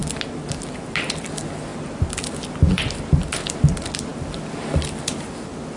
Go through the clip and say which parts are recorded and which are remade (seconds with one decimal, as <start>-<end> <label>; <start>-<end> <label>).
0.0-5.8 recorded